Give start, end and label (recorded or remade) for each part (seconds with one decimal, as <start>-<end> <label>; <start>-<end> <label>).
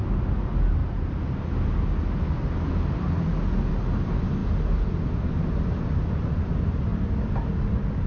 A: 0.0-8.1 recorded